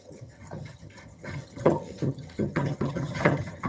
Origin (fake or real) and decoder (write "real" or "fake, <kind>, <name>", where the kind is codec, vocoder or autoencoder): fake, vocoder, HiFi-GAN